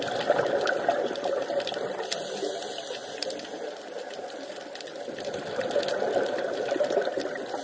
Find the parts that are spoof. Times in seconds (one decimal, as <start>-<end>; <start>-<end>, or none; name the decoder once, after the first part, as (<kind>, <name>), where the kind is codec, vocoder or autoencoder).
none